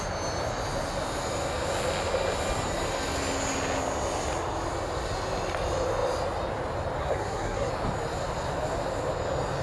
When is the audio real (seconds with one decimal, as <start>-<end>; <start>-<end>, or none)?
0.0-7.0; 7.7-9.6